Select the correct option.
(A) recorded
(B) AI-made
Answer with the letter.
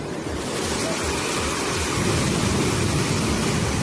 A